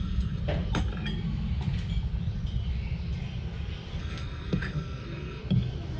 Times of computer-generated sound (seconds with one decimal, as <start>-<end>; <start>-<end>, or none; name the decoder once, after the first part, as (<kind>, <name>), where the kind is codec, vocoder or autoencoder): 0.0-0.4 (codec, SNAC); 4.0-5.4